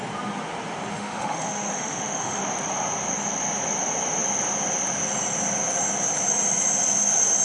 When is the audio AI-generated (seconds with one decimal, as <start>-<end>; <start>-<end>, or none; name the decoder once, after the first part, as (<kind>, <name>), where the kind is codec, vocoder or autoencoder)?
0.9-2.4 (autoencoder, DAC-VAE)